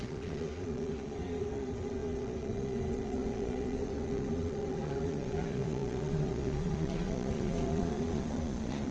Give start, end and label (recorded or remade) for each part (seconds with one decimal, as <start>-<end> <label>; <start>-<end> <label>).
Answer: 0.0-8.9 remade